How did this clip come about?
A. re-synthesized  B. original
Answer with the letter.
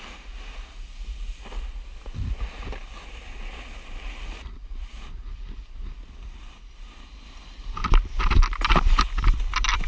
B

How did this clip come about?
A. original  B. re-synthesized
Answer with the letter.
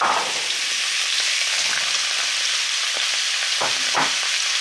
A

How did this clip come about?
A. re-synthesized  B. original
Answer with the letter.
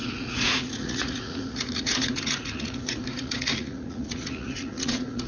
A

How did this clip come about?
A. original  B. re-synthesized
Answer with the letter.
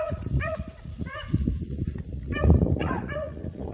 B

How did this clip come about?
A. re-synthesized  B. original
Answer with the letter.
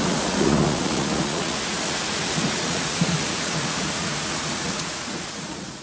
A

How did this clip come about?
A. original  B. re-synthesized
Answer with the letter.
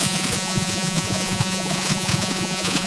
B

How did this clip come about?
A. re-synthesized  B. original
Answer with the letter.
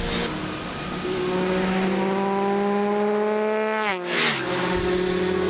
B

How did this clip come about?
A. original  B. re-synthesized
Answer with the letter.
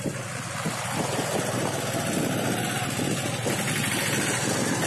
A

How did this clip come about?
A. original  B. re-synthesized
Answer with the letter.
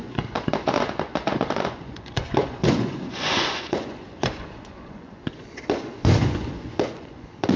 B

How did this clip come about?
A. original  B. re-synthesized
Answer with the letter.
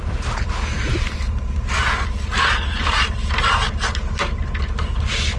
A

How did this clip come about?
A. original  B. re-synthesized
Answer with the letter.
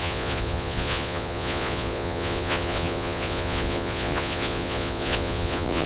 B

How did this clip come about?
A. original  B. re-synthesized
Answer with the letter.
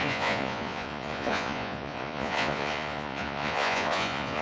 B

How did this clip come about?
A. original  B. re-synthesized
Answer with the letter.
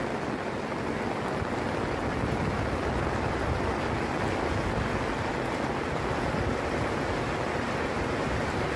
A